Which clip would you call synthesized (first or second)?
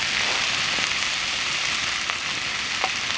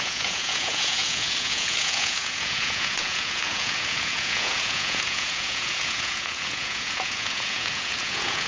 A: second